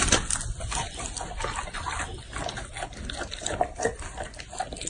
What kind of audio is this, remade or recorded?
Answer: recorded